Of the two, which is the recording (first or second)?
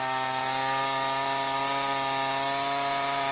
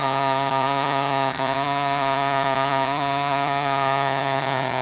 first